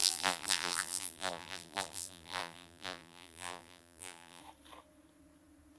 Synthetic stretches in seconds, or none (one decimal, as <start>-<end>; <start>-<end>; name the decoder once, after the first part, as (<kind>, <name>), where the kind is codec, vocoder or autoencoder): 0.0-4.4 (vocoder, BigVGAN v2)